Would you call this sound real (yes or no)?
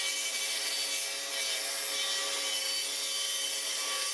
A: yes